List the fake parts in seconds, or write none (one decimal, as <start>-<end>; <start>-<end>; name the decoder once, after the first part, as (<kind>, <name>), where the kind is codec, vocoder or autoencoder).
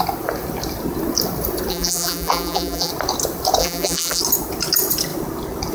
1.7-2.9 (vocoder, BigVGAN v2); 3.6-4.2